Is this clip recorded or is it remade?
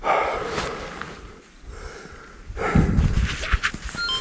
recorded